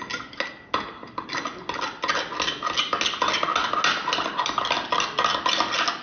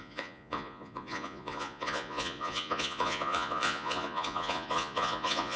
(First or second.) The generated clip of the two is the second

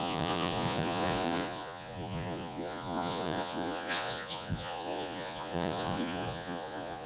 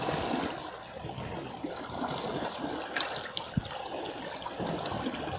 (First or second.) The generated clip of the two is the first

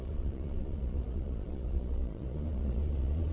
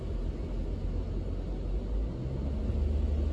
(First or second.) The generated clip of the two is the first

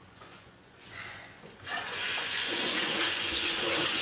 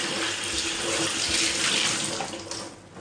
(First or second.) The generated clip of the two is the first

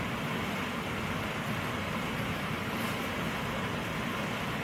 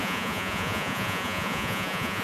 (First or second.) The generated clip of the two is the second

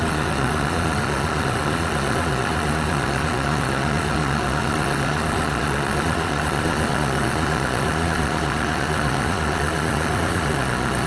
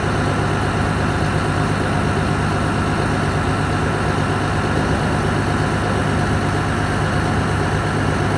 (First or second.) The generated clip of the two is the first